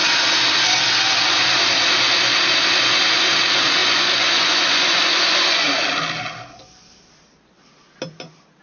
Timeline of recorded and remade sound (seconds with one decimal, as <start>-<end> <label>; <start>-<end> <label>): 0.0-3.8 recorded; 3.8-5.8 remade; 5.8-8.6 recorded